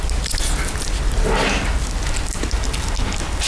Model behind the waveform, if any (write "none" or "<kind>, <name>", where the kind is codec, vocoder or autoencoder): none